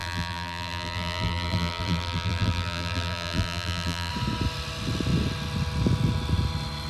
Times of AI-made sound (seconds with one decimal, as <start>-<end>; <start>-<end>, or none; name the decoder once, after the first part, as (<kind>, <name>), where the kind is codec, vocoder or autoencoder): 0.0-4.1 (vocoder, BigVGAN v2)